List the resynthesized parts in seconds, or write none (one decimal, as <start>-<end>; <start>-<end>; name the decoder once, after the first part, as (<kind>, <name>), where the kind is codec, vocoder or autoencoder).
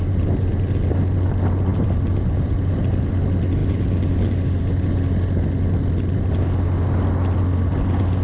0.0-1.0 (vocoder, BigVGAN v2); 1.7-3.1